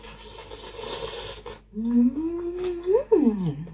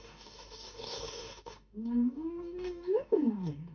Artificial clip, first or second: second